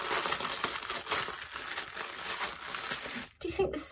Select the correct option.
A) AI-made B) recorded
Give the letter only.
B